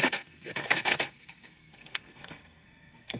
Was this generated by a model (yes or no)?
yes